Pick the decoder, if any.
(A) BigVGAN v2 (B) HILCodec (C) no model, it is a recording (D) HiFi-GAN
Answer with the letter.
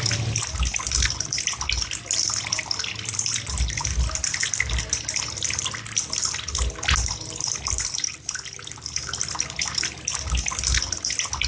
C